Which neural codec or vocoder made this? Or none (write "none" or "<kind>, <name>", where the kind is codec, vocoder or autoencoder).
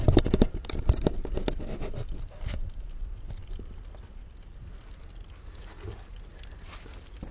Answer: none